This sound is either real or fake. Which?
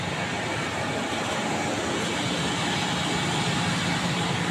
real